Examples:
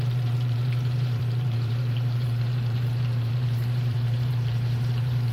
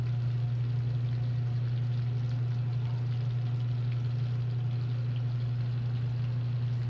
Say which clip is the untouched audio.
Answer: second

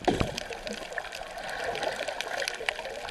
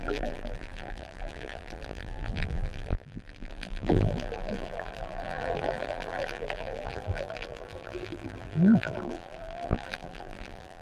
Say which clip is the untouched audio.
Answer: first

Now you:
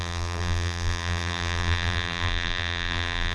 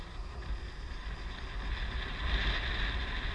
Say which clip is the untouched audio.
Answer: second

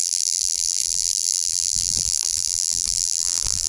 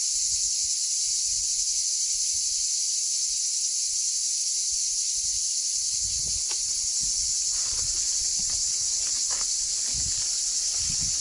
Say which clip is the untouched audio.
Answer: second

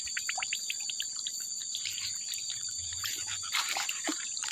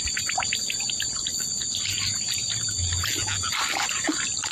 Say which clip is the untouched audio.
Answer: second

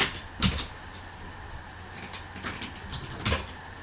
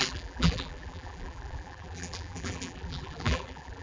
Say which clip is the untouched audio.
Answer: first